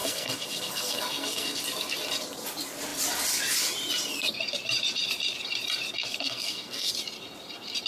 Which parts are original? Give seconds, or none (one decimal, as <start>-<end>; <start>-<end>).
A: 1.6-6.0; 6.9-7.9